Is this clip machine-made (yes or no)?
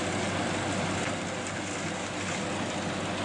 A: no